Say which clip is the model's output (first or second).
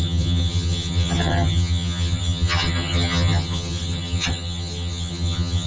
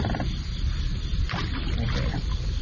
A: first